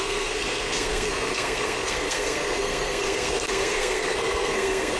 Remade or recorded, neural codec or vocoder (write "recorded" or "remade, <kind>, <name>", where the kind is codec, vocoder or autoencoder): remade, codec, SNAC